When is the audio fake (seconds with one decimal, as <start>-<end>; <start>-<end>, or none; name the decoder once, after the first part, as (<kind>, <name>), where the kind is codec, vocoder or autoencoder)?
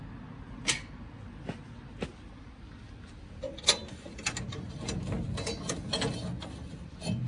none